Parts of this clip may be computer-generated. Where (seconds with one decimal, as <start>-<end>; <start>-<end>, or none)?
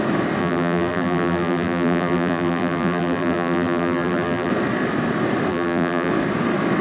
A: 0.4-4.5; 5.5-6.1